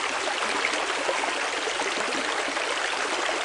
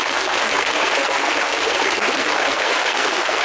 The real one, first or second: first